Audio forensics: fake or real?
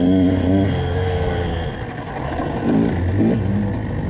real